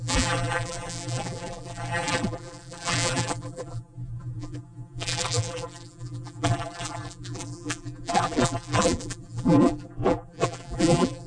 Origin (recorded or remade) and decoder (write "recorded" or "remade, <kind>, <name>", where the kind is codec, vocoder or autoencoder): remade, vocoder, BigVGAN v2